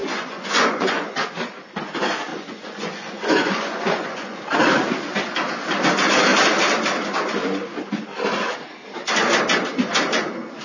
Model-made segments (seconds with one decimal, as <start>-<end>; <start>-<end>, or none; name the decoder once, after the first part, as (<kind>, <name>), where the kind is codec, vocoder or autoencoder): 0.0-1.1 (vocoder, Vocos); 2.3-4.4